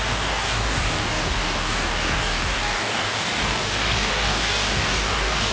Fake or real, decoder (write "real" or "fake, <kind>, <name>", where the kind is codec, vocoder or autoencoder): fake, codec, DAC